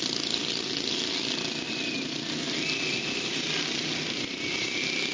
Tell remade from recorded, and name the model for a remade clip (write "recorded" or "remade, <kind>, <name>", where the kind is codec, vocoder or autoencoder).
recorded